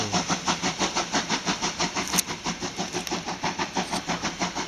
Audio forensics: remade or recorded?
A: recorded